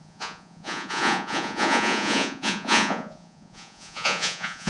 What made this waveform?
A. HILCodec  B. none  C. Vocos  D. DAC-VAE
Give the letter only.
C